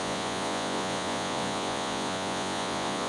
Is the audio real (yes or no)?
no